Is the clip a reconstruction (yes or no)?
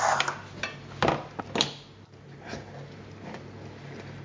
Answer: no